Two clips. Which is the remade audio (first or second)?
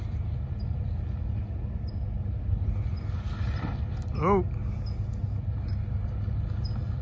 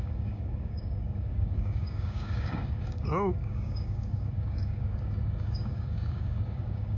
second